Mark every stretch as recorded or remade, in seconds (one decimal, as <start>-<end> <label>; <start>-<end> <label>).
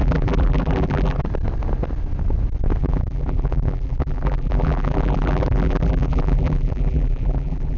0.0-1.2 remade; 1.2-2.8 recorded; 2.8-7.8 remade